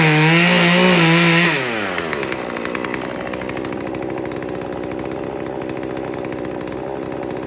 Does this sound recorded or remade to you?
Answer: recorded